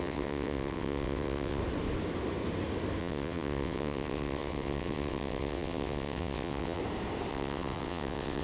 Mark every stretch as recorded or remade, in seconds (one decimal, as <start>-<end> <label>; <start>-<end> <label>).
0.0-1.6 remade; 1.6-3.0 recorded; 3.0-6.8 remade; 6.8-7.3 recorded; 7.3-8.4 remade